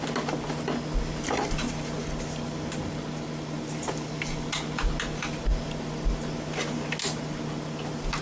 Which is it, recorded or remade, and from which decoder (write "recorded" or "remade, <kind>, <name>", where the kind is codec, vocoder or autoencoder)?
recorded